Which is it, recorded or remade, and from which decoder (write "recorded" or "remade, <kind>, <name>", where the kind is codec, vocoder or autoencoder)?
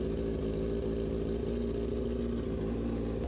recorded